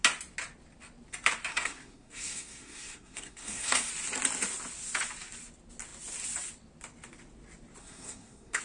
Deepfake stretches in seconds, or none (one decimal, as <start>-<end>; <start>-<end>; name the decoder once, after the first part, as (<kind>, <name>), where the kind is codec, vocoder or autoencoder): 1.5-3.9 (codec, SNAC); 7.8-8.6